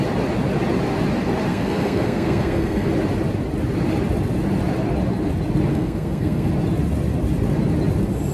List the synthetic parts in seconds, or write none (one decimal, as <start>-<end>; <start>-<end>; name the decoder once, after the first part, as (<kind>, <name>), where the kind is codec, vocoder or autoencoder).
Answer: 1.5-2.9 (codec, SNAC); 5.7-6.5

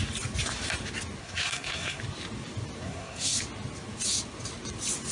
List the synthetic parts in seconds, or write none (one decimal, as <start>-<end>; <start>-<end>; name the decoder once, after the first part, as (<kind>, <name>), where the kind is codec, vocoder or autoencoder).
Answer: 1.2-2.0 (codec, SNAC); 2.8-3.4

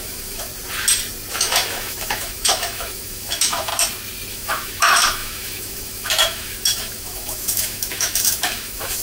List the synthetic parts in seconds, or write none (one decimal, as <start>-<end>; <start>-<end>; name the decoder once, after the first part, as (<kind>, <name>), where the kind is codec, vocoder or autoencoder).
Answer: 0.0-0.5 (autoencoder, DAC-VAE); 1.3-3.7; 4.3-9.0

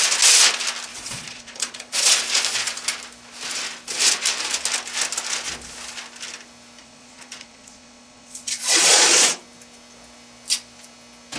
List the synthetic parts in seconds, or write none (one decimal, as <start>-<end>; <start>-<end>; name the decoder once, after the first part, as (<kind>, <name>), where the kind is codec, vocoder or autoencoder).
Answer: 0.9-2.2 (vocoder, Vocos); 6.8-9.4